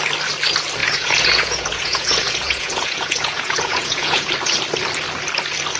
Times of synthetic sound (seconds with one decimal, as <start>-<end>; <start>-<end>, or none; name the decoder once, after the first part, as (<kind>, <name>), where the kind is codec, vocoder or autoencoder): 0.8-4.3 (vocoder, Vocos)